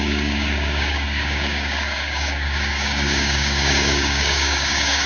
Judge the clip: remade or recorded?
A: remade